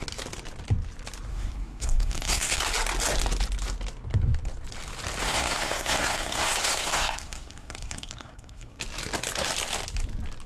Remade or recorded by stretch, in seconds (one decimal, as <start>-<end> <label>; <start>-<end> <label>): 0.0-1.3 recorded; 1.3-2.6 remade; 2.6-5.2 recorded; 5.2-8.8 remade; 8.8-10.5 recorded